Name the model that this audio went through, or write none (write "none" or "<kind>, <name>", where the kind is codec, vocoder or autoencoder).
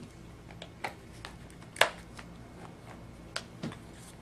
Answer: none